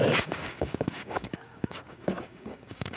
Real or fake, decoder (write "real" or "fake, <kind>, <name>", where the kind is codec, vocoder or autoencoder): fake, codec, DAC